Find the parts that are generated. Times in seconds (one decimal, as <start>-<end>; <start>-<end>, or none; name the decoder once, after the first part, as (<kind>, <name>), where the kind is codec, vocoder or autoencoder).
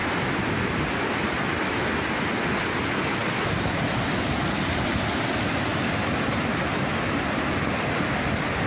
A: 0.0-2.2 (vocoder, BigVGAN v2)